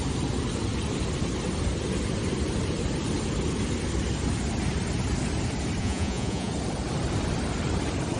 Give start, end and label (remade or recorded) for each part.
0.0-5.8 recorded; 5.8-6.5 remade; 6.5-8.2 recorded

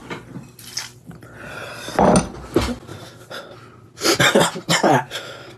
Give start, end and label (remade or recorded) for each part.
0.0-5.6 recorded

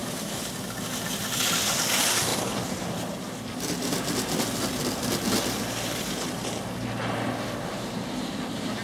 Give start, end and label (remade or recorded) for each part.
0.0-8.8 recorded

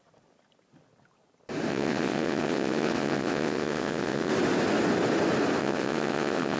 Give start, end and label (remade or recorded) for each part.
0.0-1.7 recorded; 1.7-4.3 remade; 4.3-5.6 recorded; 5.6-6.6 remade

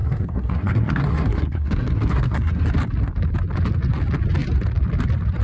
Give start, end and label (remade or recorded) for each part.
0.0-2.7 remade; 2.7-5.4 recorded

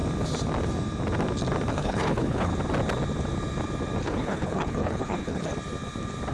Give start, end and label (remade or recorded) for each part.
0.0-1.7 recorded; 1.7-2.5 remade; 2.5-4.0 recorded; 4.0-5.5 remade; 5.5-6.3 recorded